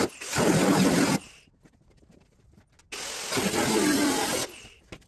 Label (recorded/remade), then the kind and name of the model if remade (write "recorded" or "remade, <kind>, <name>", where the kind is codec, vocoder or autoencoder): recorded